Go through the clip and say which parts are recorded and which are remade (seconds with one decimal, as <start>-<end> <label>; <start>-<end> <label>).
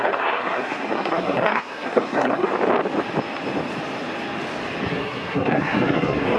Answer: 0.0-2.5 remade; 2.5-4.9 recorded; 4.9-6.4 remade